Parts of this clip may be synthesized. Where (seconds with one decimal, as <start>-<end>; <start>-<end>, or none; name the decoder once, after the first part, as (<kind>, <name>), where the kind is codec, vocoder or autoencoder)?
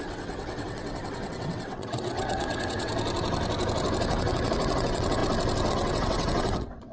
0.0-2.9 (vocoder, WaveNeXt); 4.0-5.2; 5.7-6.9